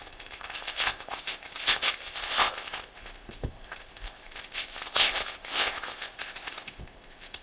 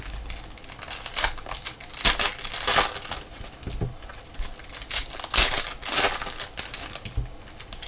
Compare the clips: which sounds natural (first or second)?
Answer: second